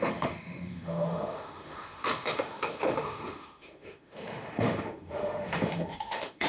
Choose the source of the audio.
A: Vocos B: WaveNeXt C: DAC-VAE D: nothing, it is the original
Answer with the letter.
C